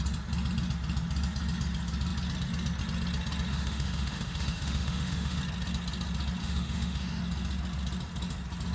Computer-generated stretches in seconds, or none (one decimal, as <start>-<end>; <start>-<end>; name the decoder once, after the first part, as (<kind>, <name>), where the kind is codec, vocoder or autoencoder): 3.5-5.4 (autoencoder, DAC-VAE); 6.4-7.2